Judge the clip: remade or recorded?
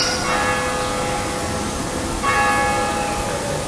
recorded